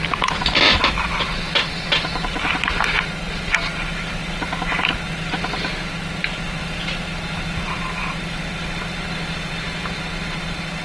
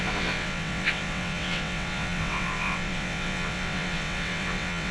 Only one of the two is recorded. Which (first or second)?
first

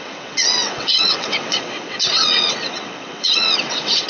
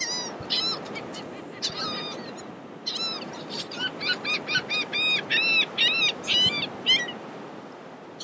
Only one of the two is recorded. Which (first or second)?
second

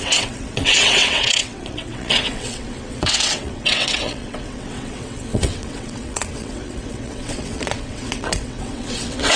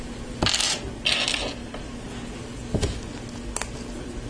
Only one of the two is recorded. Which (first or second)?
second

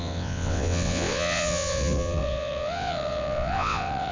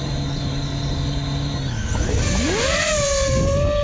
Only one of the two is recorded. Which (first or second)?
second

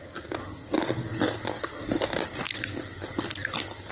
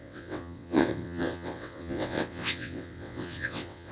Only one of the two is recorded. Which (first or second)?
first